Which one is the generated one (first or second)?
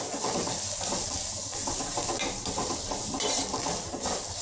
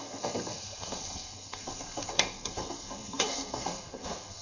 second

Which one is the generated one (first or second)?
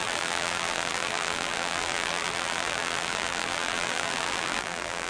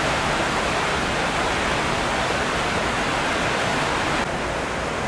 first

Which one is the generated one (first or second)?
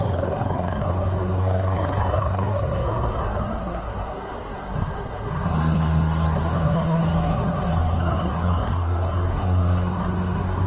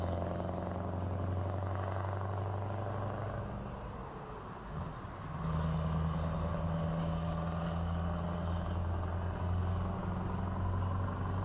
first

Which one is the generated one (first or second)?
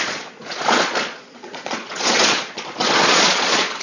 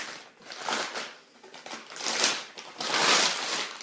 first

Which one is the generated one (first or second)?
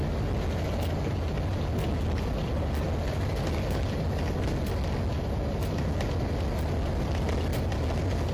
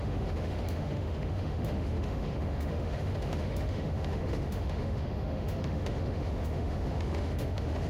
second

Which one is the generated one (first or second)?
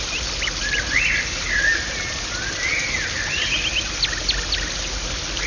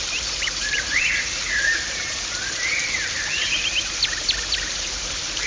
second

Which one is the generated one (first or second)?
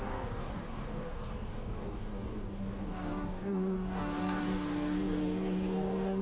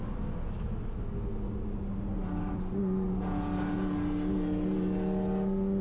first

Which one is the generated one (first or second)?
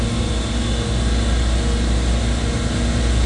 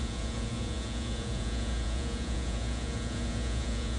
second